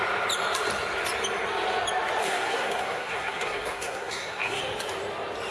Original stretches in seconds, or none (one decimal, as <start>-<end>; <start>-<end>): 0.0-2.2; 4.6-5.5

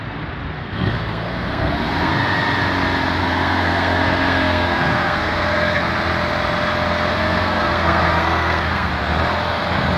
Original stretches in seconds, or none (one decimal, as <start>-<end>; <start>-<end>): 0.0-0.6; 2.1-3.2; 5.8-7.1; 8.9-10.0

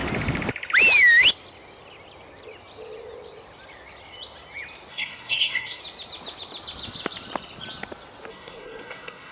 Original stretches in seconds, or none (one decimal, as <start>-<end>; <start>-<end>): 0.0-4.9; 5.8-8.3

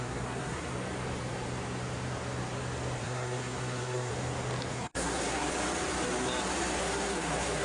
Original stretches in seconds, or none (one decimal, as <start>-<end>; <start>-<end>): 0.7-3.0; 4.1-4.7; 5.5-6.8

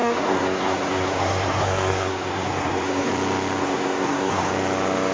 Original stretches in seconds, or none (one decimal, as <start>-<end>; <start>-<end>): 3.1-3.6; 4.5-5.1

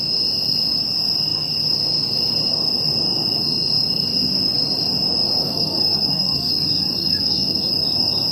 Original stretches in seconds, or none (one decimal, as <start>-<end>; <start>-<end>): 0.0-5.4; 6.5-7.0; 7.7-8.3